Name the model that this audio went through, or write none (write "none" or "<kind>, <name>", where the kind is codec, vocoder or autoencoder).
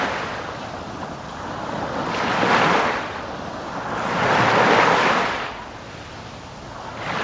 none